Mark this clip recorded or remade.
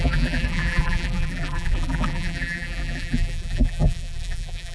remade